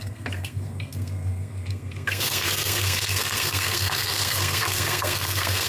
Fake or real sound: fake